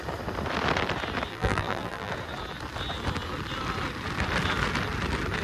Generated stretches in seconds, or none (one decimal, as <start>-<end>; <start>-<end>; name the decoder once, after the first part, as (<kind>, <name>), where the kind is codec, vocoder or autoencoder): 1.3-2.1 (vocoder, BigVGAN v2)